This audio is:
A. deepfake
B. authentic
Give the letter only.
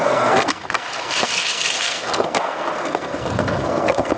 A